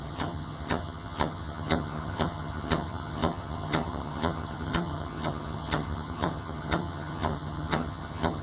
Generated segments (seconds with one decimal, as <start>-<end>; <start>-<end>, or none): 0.0-8.4